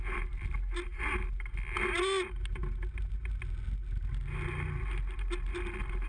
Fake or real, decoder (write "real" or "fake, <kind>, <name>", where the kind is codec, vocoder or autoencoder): real